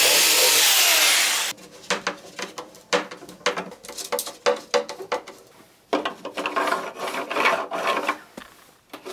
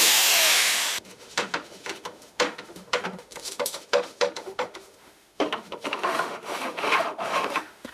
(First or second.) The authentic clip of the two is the first